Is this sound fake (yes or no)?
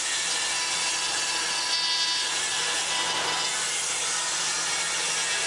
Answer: no